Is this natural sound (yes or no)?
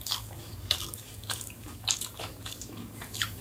no